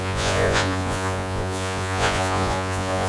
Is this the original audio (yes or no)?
no